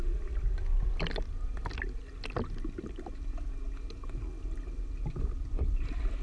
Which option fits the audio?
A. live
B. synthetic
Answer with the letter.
A